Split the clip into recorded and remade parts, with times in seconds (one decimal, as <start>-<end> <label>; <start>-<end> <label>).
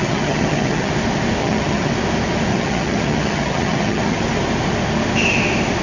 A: 0.0-0.9 remade; 0.9-1.4 recorded; 1.4-1.9 remade; 1.9-2.5 recorded; 2.5-4.2 remade; 4.2-5.8 recorded